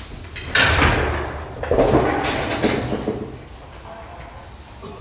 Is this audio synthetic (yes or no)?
no